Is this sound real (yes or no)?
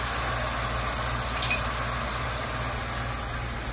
yes